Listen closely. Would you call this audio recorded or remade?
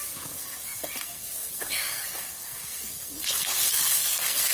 remade